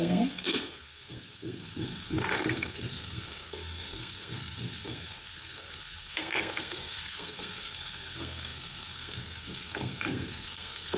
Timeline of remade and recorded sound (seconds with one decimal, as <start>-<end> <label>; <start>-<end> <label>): 0.0-11.0 remade